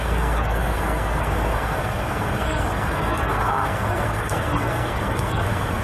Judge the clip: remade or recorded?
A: remade